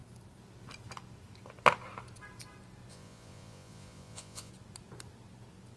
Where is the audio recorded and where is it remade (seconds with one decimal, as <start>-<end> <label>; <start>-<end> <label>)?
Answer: 0.0-2.9 recorded; 2.9-4.5 remade; 4.5-5.8 recorded